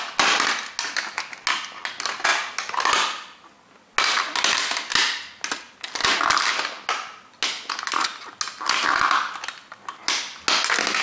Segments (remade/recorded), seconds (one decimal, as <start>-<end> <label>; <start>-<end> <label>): 0.0-11.0 recorded